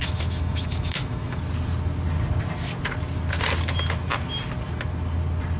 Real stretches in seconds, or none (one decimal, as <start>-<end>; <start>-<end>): 1.4-5.6